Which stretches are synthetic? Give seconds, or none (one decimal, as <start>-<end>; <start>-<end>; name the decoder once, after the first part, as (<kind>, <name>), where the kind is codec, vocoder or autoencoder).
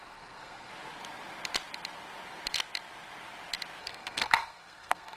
0.0-0.7 (codec, SNAC); 3.8-5.2